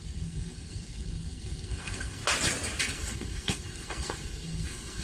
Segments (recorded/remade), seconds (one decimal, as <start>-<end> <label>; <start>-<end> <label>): 0.0-2.2 remade; 2.2-2.8 recorded; 2.8-5.0 remade